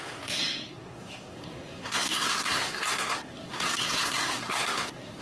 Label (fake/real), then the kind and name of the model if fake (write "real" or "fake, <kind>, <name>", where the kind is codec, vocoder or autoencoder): fake, codec, SNAC